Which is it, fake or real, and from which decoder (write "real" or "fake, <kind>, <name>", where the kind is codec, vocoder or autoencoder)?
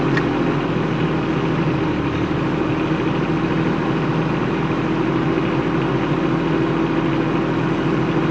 real